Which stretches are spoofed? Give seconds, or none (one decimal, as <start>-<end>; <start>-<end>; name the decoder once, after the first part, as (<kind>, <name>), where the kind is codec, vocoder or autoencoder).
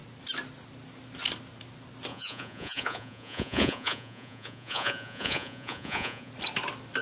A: 2.1-6.3 (vocoder, Vocos)